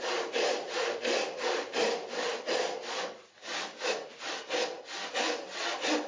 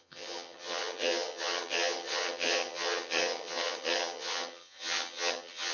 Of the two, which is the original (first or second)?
first